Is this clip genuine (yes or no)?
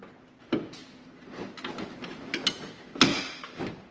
yes